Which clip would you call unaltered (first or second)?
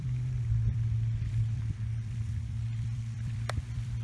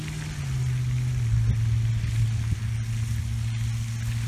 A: second